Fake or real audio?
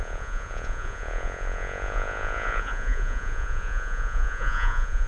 fake